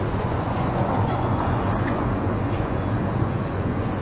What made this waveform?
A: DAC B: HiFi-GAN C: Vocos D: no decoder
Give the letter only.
C